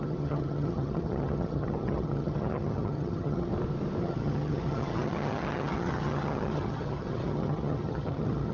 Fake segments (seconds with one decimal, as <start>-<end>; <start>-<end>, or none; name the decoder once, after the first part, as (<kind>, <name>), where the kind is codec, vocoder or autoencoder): 0.0-3.5 (vocoder, HiFi-GAN); 4.0-8.5